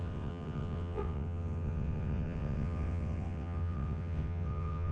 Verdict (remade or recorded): remade